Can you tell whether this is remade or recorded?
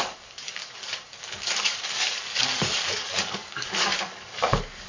remade